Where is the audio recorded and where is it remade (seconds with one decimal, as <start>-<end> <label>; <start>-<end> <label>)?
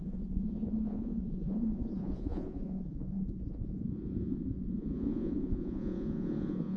0.0-6.8 remade